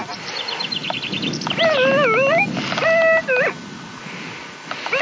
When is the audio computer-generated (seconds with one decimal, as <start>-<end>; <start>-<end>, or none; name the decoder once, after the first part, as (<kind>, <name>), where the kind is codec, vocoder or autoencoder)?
none